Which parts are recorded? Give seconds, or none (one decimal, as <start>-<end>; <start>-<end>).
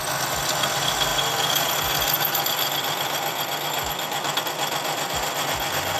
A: 0.0-6.0